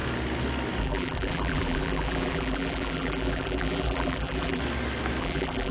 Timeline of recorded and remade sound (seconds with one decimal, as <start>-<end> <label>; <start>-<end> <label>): 0.0-0.8 recorded; 0.8-4.6 remade; 4.6-5.2 recorded; 5.2-5.7 remade